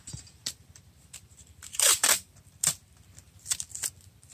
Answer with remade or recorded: remade